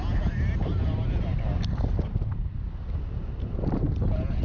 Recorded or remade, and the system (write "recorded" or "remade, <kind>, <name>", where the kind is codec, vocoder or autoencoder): recorded